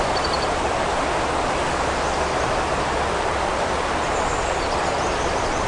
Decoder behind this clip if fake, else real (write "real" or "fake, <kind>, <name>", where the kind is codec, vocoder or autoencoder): real